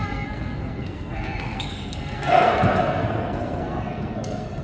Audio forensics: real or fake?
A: fake